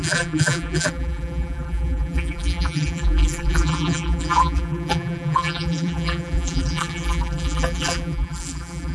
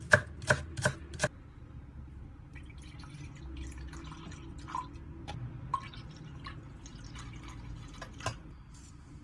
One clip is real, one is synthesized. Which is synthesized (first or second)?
first